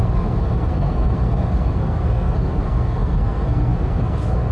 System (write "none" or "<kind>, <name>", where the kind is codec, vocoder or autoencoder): codec, SNAC